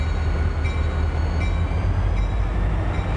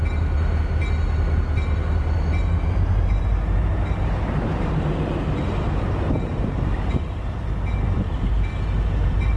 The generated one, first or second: second